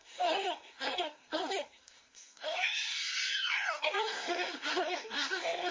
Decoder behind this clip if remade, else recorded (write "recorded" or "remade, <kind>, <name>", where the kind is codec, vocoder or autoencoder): remade, codec, SNAC